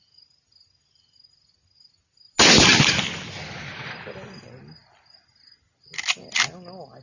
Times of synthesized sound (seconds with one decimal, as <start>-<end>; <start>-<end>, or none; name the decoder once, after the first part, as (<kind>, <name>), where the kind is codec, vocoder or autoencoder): none